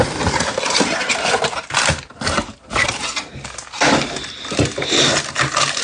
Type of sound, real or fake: real